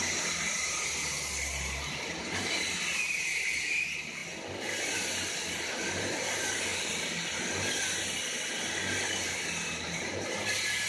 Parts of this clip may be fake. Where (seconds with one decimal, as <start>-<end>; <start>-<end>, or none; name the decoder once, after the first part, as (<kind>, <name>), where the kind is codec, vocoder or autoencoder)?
none